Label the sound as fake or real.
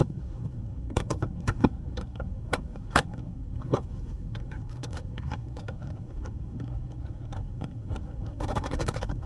fake